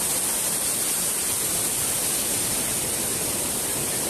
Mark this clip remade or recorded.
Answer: recorded